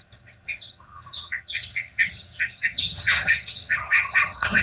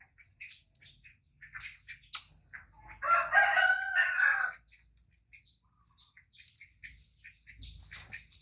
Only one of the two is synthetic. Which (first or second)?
first